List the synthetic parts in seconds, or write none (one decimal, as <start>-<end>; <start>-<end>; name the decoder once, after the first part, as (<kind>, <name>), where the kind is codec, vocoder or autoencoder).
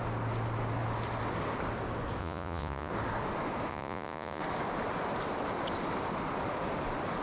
2.2-2.9 (vocoder, Vocos); 3.7-4.4